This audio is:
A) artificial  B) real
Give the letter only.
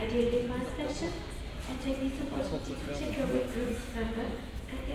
B